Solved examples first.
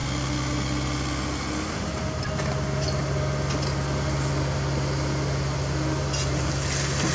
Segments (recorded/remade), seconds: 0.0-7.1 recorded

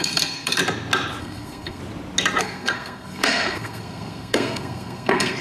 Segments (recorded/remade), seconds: 0.0-0.6 remade; 0.6-1.2 recorded; 1.2-1.8 remade; 1.8-2.4 recorded; 2.4-5.4 remade